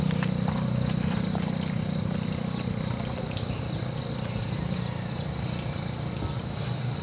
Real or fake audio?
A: real